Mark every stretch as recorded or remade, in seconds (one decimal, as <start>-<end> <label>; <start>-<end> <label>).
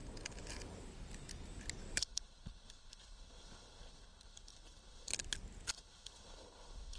0.0-2.0 recorded; 2.0-5.1 remade; 5.1-5.7 recorded; 5.7-7.0 remade